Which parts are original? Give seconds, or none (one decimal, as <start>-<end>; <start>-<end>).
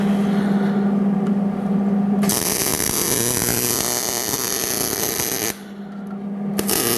0.0-7.0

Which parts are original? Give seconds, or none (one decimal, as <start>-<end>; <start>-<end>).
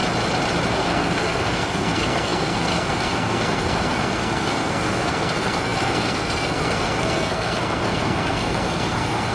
0.0-0.7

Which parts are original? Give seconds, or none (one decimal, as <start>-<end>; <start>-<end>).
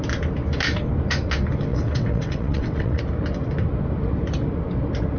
0.0-1.7; 3.0-5.2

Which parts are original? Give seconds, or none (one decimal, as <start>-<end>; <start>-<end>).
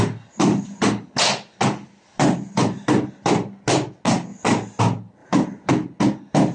0.0-6.5